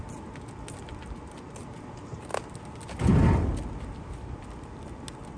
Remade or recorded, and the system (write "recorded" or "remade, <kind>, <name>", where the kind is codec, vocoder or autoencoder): recorded